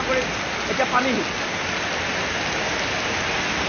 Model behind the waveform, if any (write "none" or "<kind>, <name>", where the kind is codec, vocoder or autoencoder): none